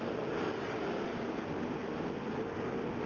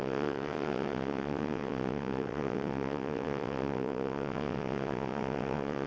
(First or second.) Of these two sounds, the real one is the first